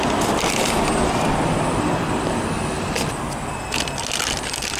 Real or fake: real